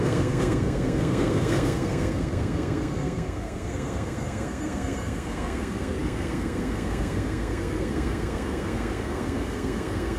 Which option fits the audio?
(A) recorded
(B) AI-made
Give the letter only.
B